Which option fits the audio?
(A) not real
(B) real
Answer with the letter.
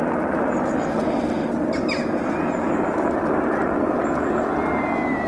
B